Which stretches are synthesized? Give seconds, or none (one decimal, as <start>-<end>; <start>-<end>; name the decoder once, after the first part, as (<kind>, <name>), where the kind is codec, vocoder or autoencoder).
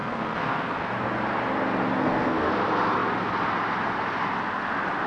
0.0-0.9 (codec, SNAC); 2.0-2.5